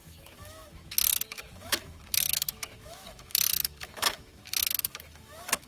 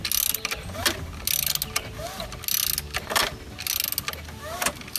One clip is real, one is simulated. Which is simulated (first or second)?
first